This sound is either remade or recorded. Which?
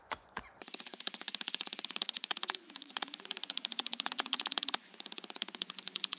remade